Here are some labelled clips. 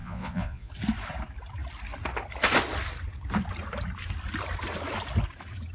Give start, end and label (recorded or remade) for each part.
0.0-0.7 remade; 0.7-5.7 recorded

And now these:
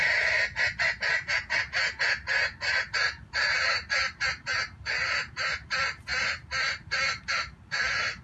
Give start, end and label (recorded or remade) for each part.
0.0-8.2 recorded

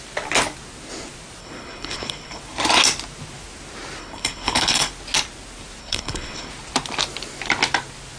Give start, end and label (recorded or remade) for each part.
0.0-1.4 recorded; 1.4-2.4 remade; 2.4-4.0 recorded; 4.0-4.9 remade; 4.9-5.8 recorded; 5.8-6.5 remade; 6.5-8.2 recorded